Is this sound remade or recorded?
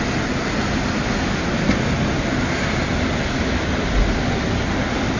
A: recorded